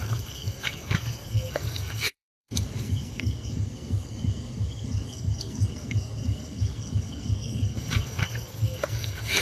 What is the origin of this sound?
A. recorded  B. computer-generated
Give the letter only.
B